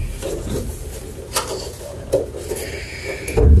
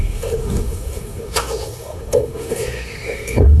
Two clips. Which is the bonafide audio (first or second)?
first